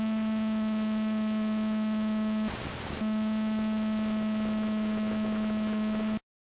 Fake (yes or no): no